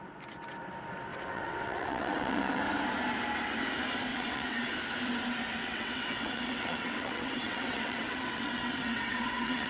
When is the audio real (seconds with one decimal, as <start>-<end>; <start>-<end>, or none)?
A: 0.0-1.1; 2.6-4.1; 4.7-5.6